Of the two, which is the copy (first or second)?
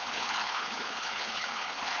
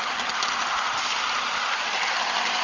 first